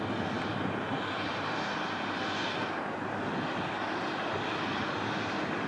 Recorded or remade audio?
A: recorded